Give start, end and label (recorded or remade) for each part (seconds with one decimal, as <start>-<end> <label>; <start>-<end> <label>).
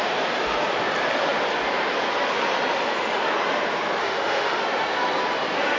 0.0-4.0 recorded; 4.0-4.6 remade; 4.6-5.8 recorded